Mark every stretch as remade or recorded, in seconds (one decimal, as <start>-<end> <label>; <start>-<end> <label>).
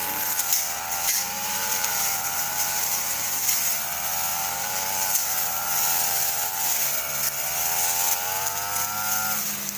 0.0-3.4 remade; 3.4-4.3 recorded; 4.3-6.7 remade; 6.7-9.8 recorded